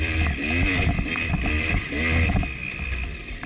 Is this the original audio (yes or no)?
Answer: no